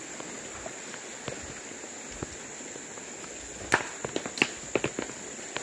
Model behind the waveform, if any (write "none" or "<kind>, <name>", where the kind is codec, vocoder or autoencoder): none